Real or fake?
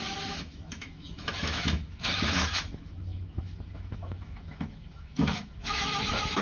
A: fake